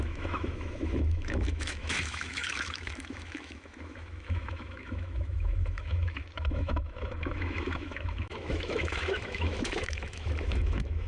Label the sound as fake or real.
fake